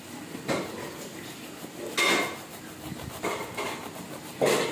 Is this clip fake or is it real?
real